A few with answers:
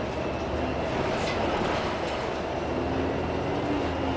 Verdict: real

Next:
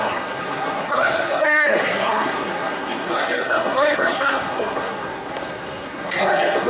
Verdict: fake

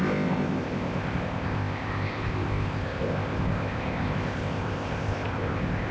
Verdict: fake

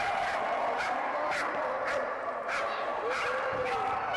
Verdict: fake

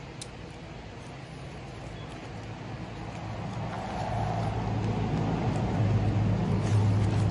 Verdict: real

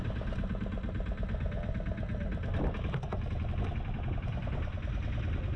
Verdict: real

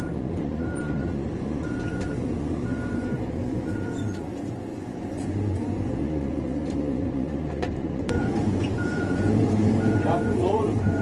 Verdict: fake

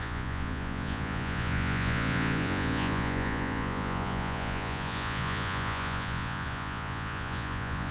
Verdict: fake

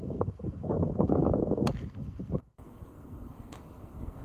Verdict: fake